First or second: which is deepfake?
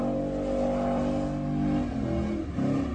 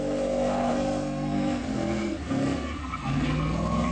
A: second